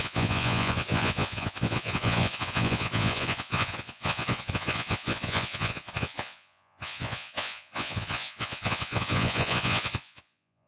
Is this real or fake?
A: fake